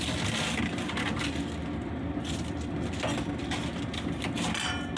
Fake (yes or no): no